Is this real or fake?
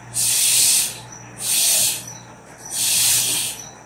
real